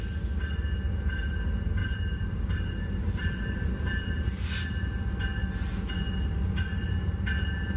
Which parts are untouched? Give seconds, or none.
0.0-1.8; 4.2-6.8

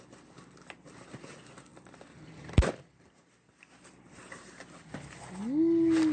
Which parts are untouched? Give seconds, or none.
0.0-1.7; 5.2-6.1